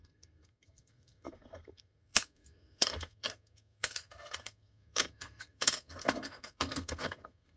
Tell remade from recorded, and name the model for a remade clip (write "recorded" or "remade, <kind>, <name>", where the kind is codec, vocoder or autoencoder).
remade, codec, SNAC